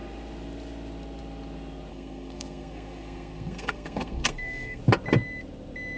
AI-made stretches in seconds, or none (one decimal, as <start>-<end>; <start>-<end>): 1.9-4.8